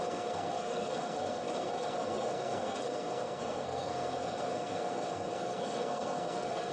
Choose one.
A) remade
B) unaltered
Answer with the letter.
A